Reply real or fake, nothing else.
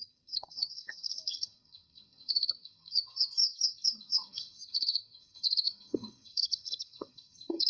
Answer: fake